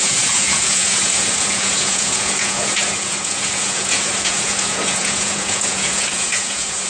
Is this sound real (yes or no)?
no